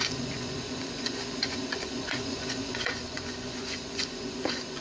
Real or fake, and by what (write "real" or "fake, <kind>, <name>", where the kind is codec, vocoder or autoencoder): fake, vocoder, Vocos